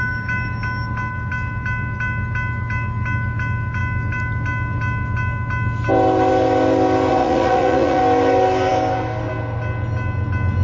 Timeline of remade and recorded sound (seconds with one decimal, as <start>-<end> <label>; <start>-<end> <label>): 0.0-7.1 recorded; 7.1-8.0 remade; 8.0-10.6 recorded